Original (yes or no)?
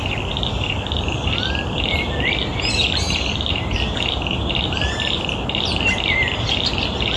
yes